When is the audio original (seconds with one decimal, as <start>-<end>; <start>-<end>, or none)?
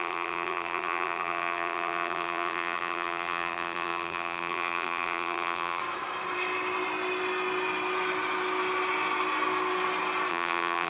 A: 5.8-10.3